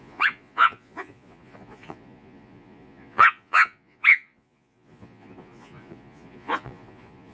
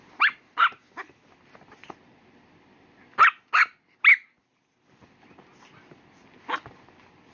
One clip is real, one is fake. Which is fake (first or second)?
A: first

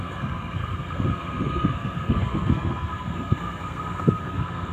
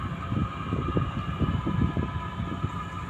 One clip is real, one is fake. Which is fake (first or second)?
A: first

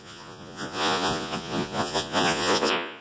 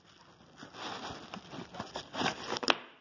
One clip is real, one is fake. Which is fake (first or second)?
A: first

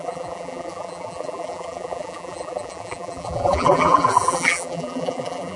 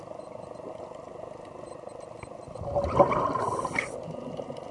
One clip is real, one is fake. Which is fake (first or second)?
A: first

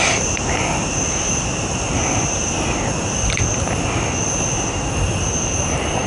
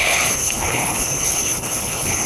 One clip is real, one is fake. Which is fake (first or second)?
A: second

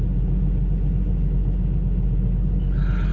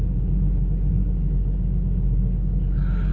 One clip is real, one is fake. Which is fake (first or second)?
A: second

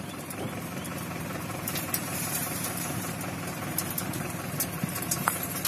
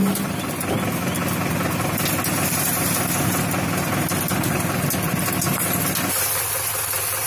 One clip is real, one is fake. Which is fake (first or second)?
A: first